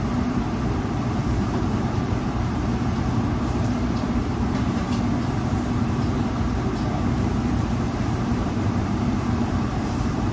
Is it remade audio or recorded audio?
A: remade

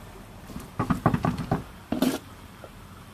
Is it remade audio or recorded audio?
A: remade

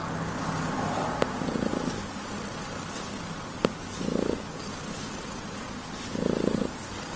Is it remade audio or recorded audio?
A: recorded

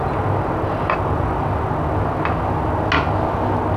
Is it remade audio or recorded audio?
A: recorded